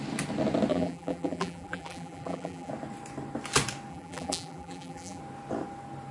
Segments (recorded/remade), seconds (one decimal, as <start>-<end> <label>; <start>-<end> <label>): 0.0-0.7 recorded; 0.7-2.7 remade; 2.7-3.9 recorded; 3.9-5.2 remade; 5.2-6.1 recorded